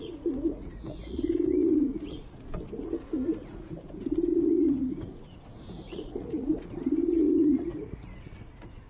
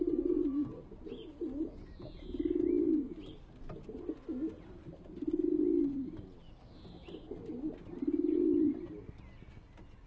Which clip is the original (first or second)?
second